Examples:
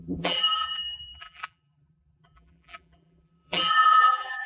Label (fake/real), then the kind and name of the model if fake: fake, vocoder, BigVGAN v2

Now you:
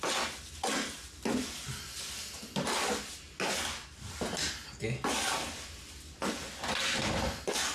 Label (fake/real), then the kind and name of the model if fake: real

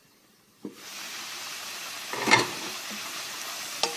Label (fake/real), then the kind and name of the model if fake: fake, vocoder, BigVGAN v2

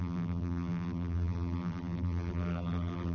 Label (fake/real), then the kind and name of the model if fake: fake, vocoder, BigVGAN v2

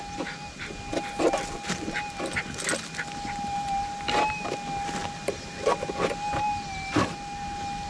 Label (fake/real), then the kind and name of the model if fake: real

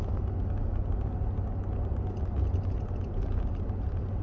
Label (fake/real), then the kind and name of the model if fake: real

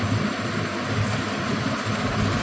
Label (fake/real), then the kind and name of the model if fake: real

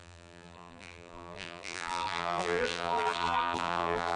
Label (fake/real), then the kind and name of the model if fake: fake, vocoder, BigVGAN v2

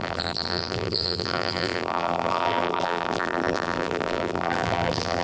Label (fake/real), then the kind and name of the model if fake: fake, vocoder, BigVGAN v2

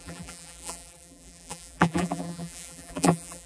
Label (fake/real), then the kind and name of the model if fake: fake, vocoder, BigVGAN v2